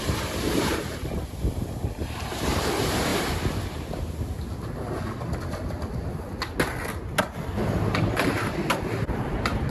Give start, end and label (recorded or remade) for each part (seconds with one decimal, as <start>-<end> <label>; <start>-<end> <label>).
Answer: 0.0-1.0 remade; 1.0-1.8 recorded; 1.8-3.1 remade; 3.1-8.0 recorded; 8.0-9.7 remade